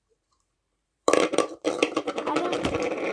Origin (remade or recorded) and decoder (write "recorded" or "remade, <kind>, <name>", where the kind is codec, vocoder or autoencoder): remade, vocoder, BigVGAN v2